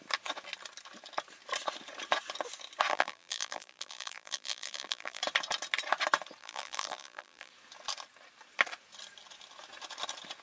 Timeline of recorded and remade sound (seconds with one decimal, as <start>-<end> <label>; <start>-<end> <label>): 0.0-2.9 recorded; 2.9-5.2 remade; 5.2-6.4 recorded; 6.4-7.5 remade; 7.5-10.4 recorded